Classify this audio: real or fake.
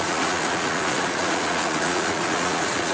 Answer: fake